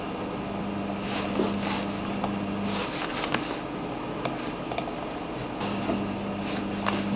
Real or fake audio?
real